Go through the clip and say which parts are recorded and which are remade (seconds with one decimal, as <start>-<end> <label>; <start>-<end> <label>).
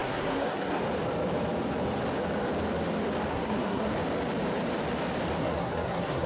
0.0-0.8 remade; 0.8-3.3 recorded; 3.3-3.9 remade; 3.9-5.4 recorded; 5.4-6.3 remade